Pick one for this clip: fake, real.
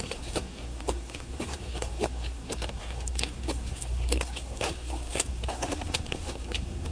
fake